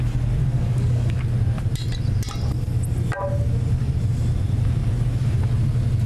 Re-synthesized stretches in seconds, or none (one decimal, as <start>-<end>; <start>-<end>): 0.4-1.2